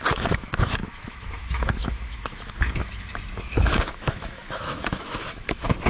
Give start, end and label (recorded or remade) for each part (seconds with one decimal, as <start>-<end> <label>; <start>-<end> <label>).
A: 0.0-3.1 remade; 3.1-3.6 recorded; 3.6-5.9 remade